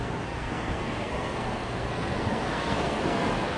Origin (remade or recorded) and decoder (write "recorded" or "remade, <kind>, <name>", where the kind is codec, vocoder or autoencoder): remade, codec, SNAC